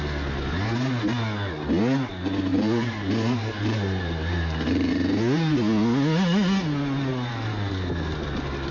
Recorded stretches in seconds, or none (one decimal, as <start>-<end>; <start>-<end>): 0.0-2.5; 5.2-7.1; 7.7-8.7